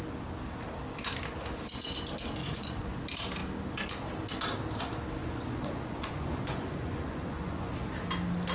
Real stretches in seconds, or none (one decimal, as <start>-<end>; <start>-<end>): 0.0-2.4; 3.0-5.2; 7.7-8.5